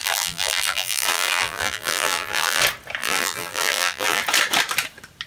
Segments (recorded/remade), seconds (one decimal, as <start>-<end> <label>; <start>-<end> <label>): 0.0-2.6 remade; 2.6-3.0 recorded; 3.0-4.2 remade; 4.2-5.3 recorded